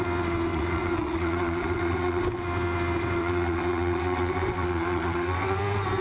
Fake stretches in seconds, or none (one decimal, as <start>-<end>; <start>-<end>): 0.5-2.2; 3.2-5.6